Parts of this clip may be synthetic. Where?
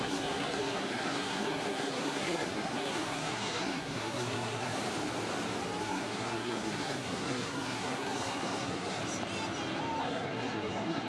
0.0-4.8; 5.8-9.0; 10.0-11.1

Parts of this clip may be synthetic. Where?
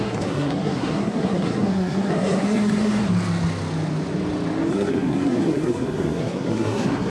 0.0-3.0; 4.7-7.1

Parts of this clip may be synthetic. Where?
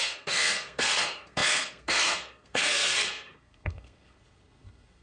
0.0-5.0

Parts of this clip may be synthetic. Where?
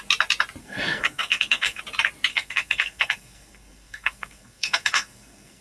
0.6-1.8; 2.3-5.6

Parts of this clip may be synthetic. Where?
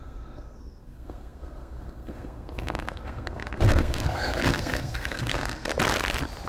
0.0-5.7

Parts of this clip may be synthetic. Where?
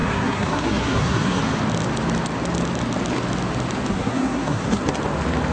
0.0-1.4; 3.9-4.8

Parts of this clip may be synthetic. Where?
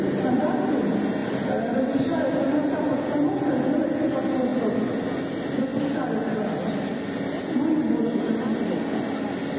none